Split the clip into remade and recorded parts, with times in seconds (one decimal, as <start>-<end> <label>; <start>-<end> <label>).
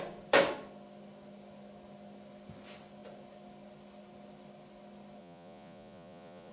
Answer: 0.0-5.2 recorded; 5.2-6.5 remade